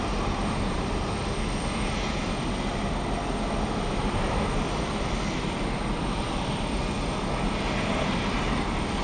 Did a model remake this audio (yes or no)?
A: no